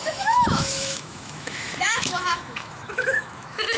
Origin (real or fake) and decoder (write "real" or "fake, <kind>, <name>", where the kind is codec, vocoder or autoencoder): fake, autoencoder, DAC-VAE